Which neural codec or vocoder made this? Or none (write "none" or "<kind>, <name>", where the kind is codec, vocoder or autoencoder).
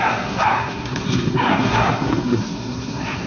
codec, SNAC